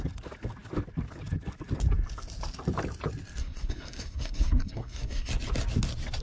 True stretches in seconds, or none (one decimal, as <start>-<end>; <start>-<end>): 0.0-3.4; 5.3-6.2